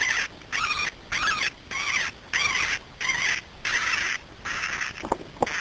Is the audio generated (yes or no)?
no